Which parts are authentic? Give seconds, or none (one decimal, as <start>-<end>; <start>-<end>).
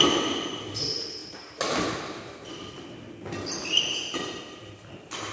0.0-5.3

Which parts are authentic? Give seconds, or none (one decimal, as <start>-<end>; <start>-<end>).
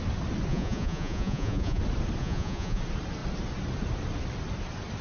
0.0-0.5; 1.8-2.2; 2.8-5.0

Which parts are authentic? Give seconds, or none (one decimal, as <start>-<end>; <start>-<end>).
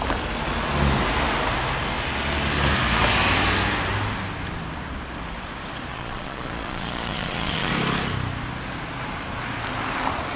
0.0-5.9; 7.7-10.4